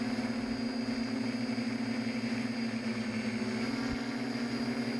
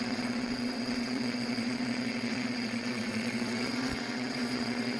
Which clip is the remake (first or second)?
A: second